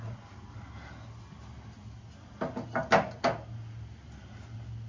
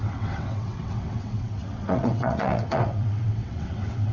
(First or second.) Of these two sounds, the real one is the first